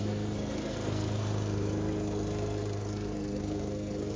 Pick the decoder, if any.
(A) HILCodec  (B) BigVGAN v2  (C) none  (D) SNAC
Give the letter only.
D